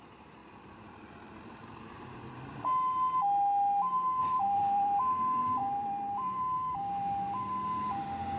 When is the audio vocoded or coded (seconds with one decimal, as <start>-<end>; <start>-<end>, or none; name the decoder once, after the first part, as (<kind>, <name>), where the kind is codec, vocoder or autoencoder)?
0.4-2.3 (vocoder, BigVGAN v2); 4.2-5.0; 5.4-6.8